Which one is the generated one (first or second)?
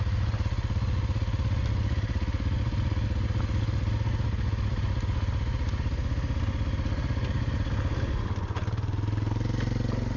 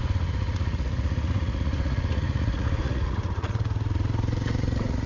second